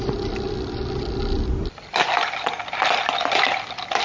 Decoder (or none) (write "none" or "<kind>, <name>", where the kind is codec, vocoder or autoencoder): vocoder, BigVGAN v2